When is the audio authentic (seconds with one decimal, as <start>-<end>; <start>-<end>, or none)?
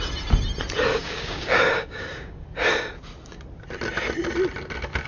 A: 0.0-0.9; 2.4-5.1